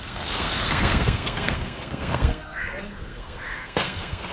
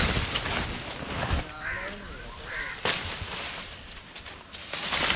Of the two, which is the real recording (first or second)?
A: second